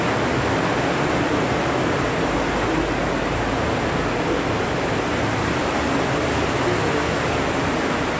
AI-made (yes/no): no